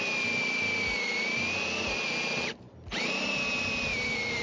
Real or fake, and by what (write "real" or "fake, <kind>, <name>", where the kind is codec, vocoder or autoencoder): real